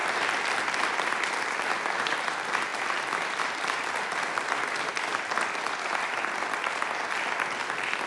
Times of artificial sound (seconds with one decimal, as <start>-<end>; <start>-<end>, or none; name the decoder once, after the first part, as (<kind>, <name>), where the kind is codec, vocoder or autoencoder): none